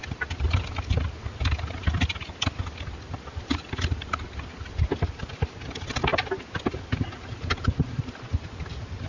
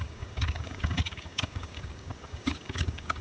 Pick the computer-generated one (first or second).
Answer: second